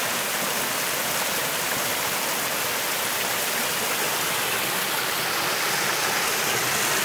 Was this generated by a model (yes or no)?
no